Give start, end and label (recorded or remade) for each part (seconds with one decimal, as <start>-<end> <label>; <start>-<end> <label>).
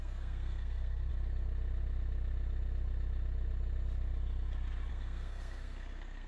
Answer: 0.0-1.1 remade; 1.1-4.9 recorded; 4.9-6.3 remade